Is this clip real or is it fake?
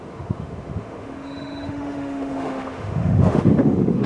fake